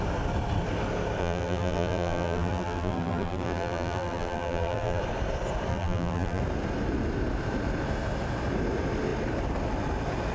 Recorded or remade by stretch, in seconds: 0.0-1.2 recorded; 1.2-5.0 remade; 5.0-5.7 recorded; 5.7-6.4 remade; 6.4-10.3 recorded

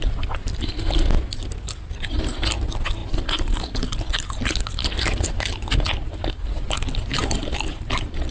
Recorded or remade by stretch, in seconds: 0.0-3.0 recorded; 3.0-4.4 remade; 4.4-7.2 recorded; 7.2-8.3 remade